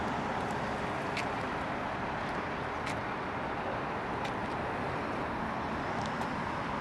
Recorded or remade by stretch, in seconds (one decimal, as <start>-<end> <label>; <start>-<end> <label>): 0.0-6.8 recorded